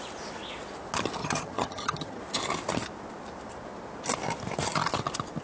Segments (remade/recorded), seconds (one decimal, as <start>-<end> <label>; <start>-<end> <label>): 0.0-1.2 recorded; 1.2-2.2 remade; 2.2-5.4 recorded